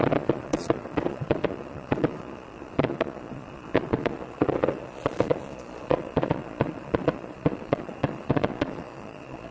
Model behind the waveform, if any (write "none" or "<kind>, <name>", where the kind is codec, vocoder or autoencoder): vocoder, Vocos